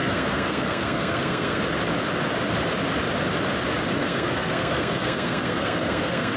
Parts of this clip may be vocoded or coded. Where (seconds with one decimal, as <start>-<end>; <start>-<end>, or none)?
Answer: 0.0-1.6; 4.0-6.4